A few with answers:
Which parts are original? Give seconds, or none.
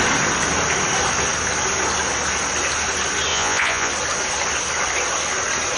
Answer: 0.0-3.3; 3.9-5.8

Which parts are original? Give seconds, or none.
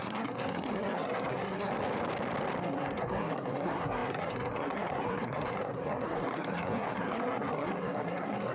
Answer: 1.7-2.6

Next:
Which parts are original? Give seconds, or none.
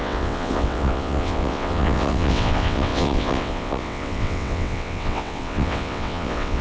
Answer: none